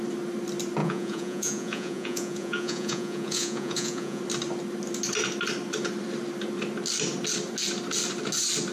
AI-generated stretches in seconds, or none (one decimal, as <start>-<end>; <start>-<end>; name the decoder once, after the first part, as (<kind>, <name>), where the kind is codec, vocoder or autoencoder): 0.8-4.2 (vocoder, Vocos)